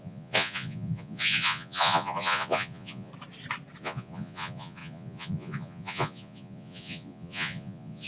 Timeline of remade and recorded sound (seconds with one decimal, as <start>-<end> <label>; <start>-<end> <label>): 0.0-3.1 remade; 3.1-3.8 recorded; 3.8-8.1 remade